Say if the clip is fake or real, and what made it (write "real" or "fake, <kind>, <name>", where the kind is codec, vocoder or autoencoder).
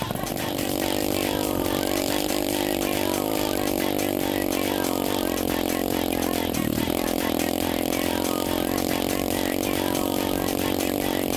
real